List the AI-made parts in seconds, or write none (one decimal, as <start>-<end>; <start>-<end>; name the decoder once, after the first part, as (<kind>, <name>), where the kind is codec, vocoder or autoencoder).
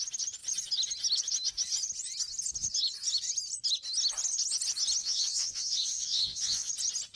5.0-6.7 (vocoder, WaveNeXt)